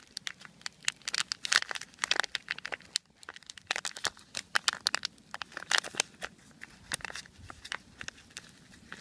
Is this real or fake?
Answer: real